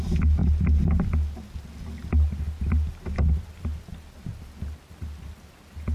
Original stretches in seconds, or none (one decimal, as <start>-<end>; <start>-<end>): 0.0-5.9